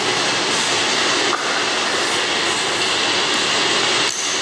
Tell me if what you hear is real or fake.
real